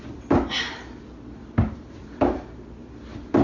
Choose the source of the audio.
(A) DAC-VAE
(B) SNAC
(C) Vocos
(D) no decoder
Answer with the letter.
D